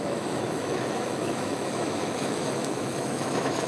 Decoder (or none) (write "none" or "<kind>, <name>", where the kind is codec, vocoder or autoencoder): autoencoder, DAC-VAE